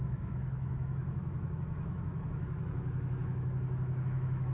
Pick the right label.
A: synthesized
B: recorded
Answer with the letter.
A